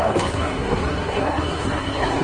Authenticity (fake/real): fake